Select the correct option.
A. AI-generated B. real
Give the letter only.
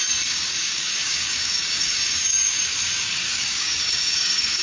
A